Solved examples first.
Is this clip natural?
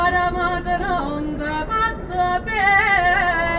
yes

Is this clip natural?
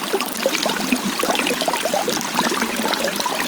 yes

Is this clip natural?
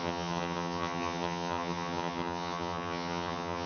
no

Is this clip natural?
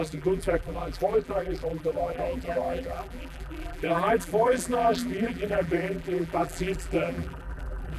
no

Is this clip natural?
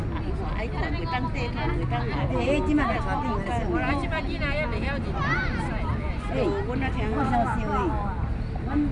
yes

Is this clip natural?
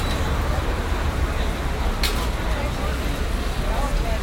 yes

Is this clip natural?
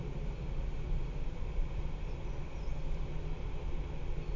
yes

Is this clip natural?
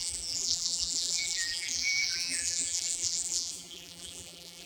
no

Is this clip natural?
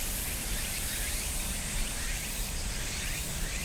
no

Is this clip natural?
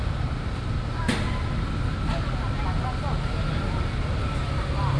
yes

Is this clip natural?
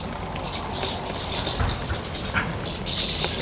yes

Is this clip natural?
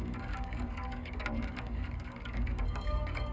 no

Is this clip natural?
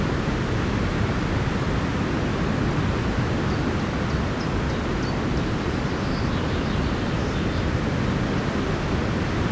yes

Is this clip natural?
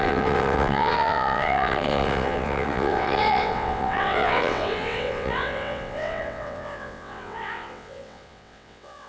no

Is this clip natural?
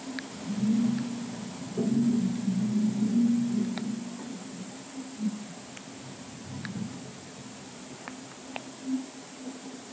yes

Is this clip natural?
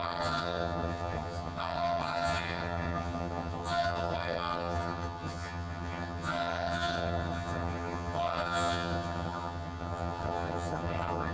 no